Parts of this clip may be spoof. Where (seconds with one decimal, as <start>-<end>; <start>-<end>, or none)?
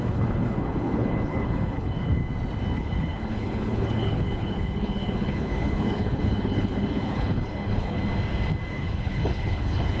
0.0-2.2; 2.8-8.0; 8.7-10.0